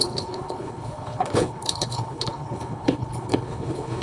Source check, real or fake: fake